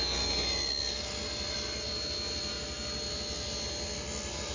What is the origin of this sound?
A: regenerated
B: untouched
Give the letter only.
B